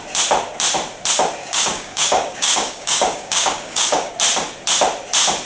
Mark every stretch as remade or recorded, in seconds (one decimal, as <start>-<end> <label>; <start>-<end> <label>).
0.0-1.4 recorded; 1.4-4.1 remade; 4.1-5.5 recorded